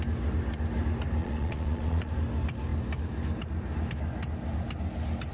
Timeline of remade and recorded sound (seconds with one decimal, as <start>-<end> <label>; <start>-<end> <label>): 0.0-1.2 recorded; 1.2-2.1 remade; 2.1-5.3 recorded